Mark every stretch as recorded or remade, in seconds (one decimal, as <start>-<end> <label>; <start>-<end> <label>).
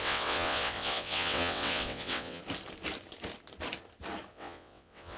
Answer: 0.0-2.4 remade; 2.4-4.3 recorded; 4.3-5.2 remade